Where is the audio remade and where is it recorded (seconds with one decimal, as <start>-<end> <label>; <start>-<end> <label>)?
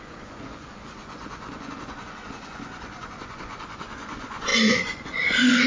0.0-5.7 remade